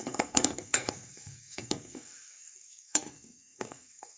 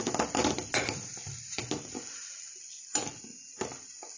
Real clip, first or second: second